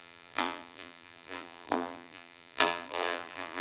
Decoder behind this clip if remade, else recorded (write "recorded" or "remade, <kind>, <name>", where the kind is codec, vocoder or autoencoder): remade, vocoder, BigVGAN v2